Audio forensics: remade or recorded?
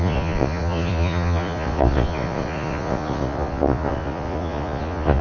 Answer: remade